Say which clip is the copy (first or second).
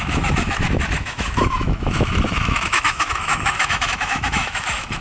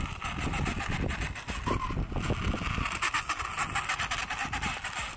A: first